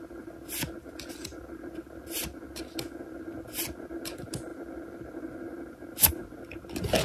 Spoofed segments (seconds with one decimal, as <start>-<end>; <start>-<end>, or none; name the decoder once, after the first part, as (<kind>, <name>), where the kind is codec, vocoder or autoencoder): none

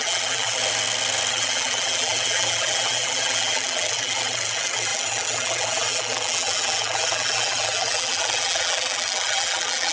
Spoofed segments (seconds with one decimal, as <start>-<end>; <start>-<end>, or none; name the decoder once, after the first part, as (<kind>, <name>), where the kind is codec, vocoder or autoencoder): 0.0-0.6 (vocoder, BigVGAN v2); 1.3-9.9

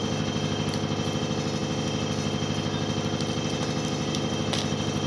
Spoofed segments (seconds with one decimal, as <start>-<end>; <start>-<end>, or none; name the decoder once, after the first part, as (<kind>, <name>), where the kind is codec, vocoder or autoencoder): none

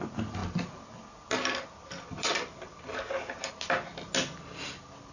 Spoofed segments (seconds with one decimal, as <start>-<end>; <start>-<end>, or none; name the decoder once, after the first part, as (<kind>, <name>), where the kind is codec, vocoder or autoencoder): none

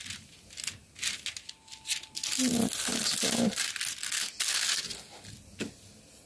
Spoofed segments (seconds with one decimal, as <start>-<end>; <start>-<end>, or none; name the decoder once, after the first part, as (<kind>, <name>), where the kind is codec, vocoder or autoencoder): none